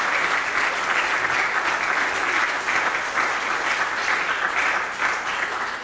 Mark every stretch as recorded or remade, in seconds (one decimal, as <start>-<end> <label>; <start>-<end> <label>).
0.0-5.8 recorded